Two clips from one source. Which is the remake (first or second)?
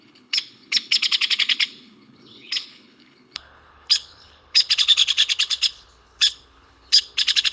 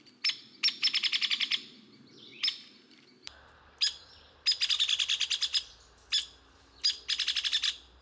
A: first